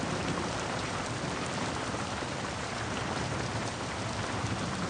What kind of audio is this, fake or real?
fake